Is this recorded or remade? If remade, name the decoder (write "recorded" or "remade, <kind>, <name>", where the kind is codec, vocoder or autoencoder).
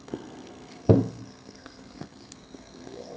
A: remade, codec, SNAC